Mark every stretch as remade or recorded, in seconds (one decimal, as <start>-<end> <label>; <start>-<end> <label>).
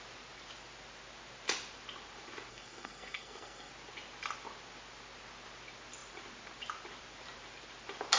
0.0-2.5 recorded; 2.5-3.7 remade; 3.7-8.2 recorded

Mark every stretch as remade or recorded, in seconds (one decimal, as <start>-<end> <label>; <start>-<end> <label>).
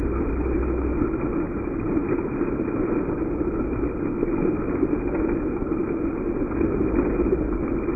0.0-8.0 recorded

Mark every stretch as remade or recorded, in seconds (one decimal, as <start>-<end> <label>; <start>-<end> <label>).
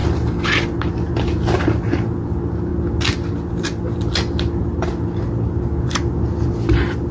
0.0-7.1 recorded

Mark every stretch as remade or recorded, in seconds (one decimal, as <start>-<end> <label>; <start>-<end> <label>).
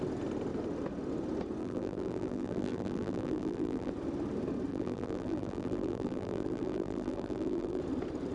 0.0-1.6 recorded; 1.6-3.9 remade; 3.9-4.7 recorded; 4.7-7.8 remade; 7.8-8.3 recorded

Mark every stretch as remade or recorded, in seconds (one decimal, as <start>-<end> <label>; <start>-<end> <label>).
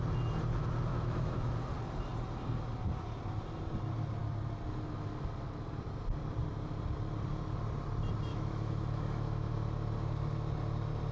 0.0-0.9 recorded; 0.9-1.5 remade; 1.5-8.3 recorded; 8.3-9.5 remade; 9.5-11.1 recorded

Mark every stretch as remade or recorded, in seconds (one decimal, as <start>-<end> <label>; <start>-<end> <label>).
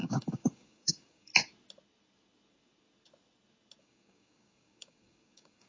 0.0-1.3 remade; 1.3-3.8 recorded; 3.8-5.7 remade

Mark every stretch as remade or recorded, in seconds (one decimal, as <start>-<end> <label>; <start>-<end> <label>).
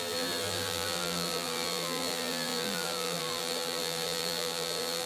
0.0-5.1 remade